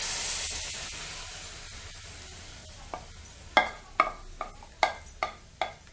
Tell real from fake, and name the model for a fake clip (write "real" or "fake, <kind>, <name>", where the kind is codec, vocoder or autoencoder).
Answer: real